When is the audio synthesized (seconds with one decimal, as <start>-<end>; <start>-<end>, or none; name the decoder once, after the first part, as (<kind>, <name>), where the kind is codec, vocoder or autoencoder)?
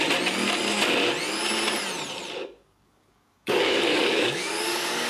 2.4-5.1 (codec, DAC)